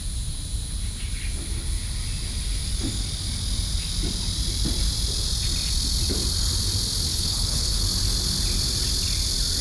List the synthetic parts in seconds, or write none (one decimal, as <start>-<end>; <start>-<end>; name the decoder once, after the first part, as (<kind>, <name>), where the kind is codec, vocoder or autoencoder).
7.1-7.8 (codec, HILCodec)